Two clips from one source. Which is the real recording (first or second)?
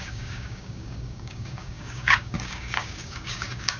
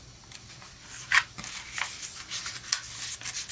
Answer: second